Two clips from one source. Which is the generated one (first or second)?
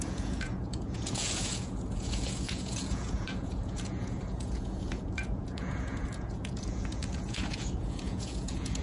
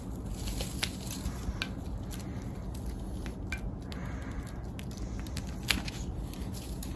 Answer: first